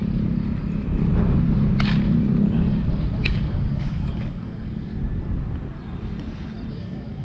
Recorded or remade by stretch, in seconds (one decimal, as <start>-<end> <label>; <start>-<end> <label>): 0.0-3.2 recorded; 3.2-4.9 remade; 4.9-6.7 recorded; 6.7-7.2 remade